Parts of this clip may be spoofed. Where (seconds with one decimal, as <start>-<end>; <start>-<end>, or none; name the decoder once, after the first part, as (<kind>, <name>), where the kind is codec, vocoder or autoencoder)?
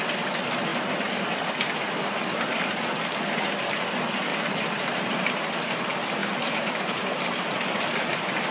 4.3-5.8 (vocoder, BigVGAN v2); 6.2-7.8